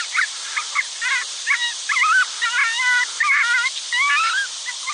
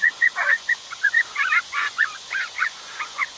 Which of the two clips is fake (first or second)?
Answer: second